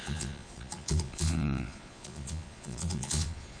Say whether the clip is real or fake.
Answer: fake